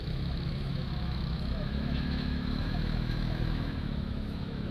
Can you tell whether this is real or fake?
fake